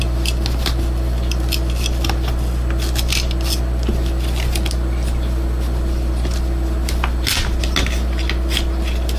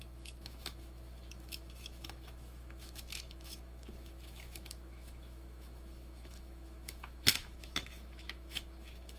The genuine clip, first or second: first